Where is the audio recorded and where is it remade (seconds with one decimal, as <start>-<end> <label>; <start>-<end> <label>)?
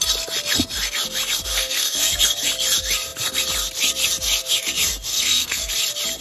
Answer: 0.0-1.5 recorded; 1.5-2.2 remade; 2.2-5.1 recorded; 5.1-5.7 remade; 5.7-6.2 recorded